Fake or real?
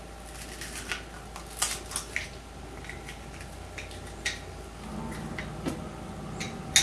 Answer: real